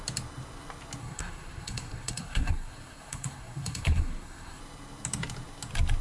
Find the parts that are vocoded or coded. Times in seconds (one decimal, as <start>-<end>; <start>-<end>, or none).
1.0-4.6

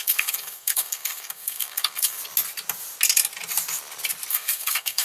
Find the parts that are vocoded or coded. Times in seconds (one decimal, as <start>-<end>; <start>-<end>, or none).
0.0-2.2; 4.3-5.0